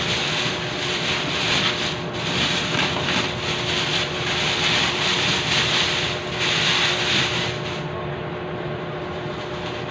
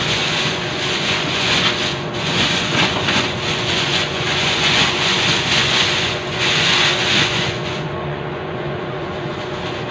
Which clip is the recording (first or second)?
first